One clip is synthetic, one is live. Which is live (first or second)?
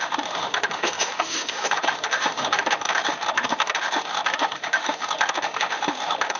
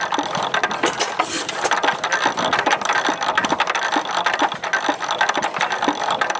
second